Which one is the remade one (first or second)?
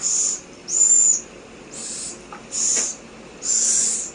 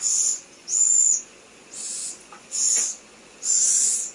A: second